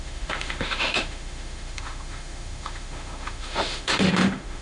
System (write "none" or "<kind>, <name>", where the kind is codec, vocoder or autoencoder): autoencoder, DAC-VAE